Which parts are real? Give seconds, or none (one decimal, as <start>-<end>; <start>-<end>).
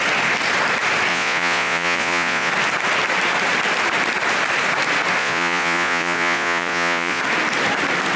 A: 0.0-1.1; 2.5-5.2; 7.2-8.2